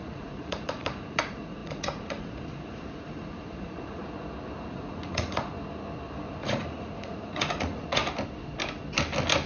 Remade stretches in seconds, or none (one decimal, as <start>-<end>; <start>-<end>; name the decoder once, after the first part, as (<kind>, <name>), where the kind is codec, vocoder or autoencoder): 0.0-4.0 (vocoder, Vocos); 4.7-5.5; 6.5-8.0